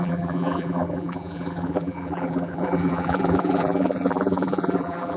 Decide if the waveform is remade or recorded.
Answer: remade